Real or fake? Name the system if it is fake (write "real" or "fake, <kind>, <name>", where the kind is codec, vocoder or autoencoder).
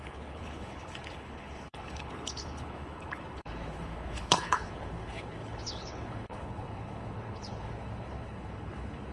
fake, codec, HILCodec